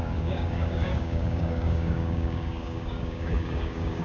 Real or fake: fake